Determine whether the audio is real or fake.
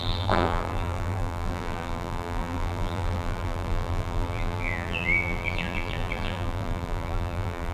fake